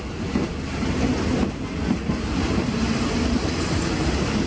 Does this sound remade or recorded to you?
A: recorded